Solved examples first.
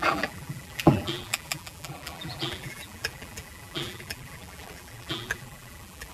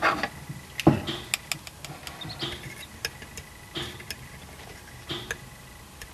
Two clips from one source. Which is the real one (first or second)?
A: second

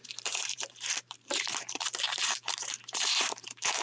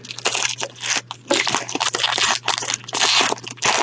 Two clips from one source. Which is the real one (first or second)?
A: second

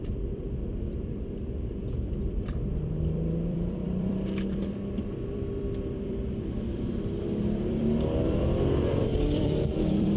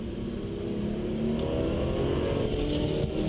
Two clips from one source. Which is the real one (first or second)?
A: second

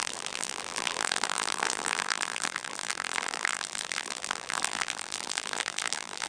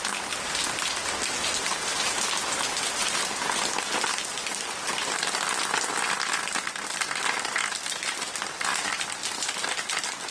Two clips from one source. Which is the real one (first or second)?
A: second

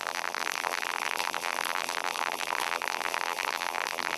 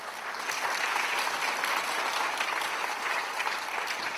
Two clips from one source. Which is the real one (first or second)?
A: second